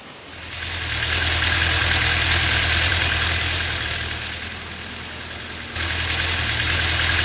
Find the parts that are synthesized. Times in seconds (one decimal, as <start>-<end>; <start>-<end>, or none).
none